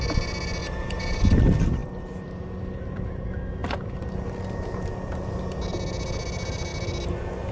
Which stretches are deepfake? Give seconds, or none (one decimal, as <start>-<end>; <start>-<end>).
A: 0.6-1.2

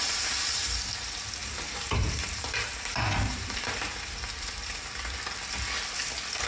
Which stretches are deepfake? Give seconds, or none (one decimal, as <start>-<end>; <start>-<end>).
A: 1.4-5.2

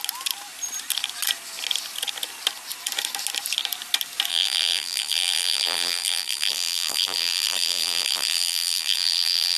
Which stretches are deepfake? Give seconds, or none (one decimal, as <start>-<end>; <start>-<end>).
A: 4.3-9.6

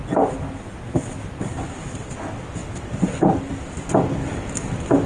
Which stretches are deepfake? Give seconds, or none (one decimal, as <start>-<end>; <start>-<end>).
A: none

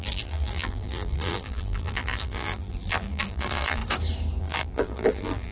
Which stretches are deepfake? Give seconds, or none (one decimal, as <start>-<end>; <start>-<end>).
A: 0.0-3.8; 4.4-5.5